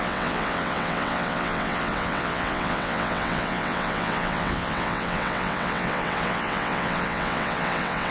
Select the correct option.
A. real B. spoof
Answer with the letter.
B